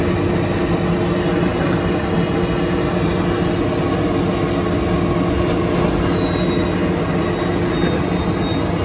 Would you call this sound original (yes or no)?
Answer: yes